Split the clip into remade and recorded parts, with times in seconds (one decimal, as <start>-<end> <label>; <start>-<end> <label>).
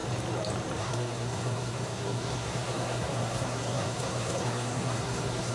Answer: 0.0-0.8 recorded; 0.8-5.5 remade